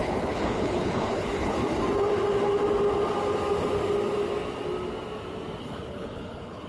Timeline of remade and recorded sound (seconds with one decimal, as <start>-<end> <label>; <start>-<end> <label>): 0.0-1.6 remade; 1.6-5.6 recorded; 5.6-6.7 remade